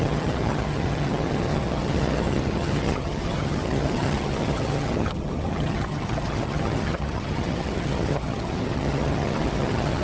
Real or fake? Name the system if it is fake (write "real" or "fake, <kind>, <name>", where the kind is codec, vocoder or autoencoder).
fake, vocoder, HiFi-GAN